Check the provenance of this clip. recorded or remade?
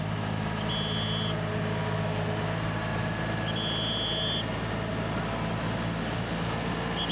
recorded